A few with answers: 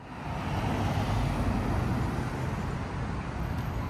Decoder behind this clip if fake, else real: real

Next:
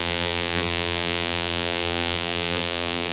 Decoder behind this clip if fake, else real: fake, vocoder, BigVGAN v2